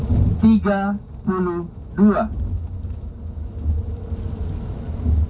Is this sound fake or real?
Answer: real